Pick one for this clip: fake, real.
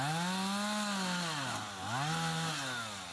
real